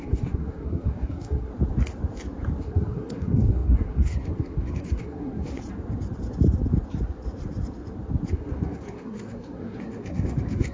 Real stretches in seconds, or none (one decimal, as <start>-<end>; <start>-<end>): 1.5-2.6; 5.6-8.3